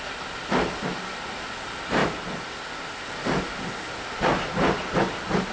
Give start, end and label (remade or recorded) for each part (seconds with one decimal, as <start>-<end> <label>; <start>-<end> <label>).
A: 0.0-5.5 recorded